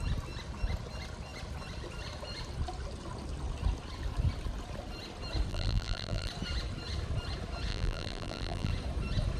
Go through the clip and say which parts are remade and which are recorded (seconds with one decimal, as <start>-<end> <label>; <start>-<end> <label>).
0.0-5.5 recorded; 5.5-6.3 remade; 6.3-7.7 recorded; 7.7-8.7 remade; 8.7-9.4 recorded